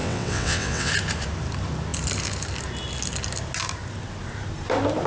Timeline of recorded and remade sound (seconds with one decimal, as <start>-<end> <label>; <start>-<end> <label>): 0.0-0.9 remade; 0.9-5.1 recorded